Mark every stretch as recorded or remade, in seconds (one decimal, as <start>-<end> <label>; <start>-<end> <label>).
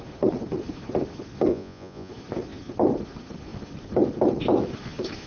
0.0-1.5 recorded; 1.5-2.1 remade; 2.1-5.3 recorded